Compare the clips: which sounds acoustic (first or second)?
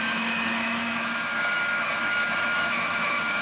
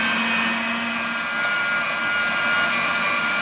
second